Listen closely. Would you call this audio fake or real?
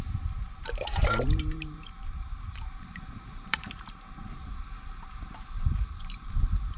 fake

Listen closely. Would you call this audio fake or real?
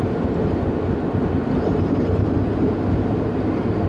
real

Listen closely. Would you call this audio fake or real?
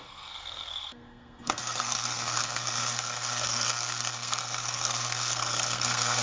fake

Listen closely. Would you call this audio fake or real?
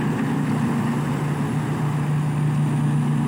real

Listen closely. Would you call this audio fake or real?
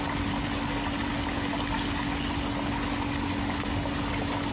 real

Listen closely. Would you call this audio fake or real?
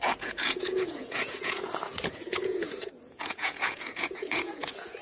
fake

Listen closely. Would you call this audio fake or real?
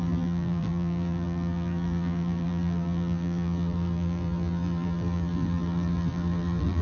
fake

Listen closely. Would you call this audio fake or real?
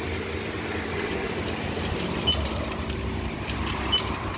real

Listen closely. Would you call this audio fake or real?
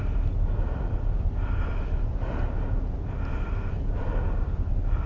real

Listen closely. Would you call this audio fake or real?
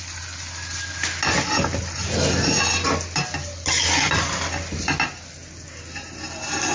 real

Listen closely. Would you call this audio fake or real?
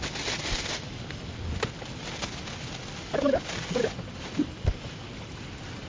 real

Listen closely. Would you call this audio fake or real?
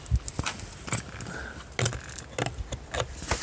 real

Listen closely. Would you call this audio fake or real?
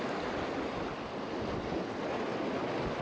real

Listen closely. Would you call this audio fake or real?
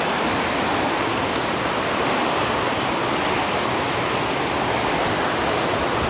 real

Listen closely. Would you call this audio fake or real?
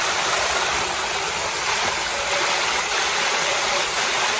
real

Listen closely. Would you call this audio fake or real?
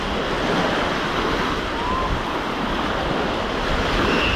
real